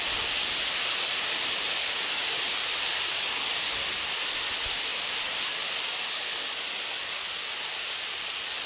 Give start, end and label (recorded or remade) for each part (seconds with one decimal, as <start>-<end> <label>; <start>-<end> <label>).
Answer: 0.0-8.7 recorded